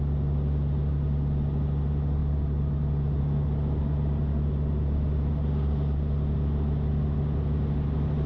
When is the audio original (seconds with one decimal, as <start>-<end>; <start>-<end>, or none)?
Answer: 0.0-8.3